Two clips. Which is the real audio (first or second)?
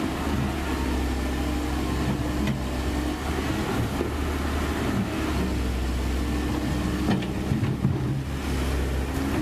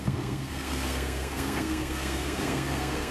first